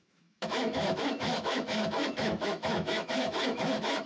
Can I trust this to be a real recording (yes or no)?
no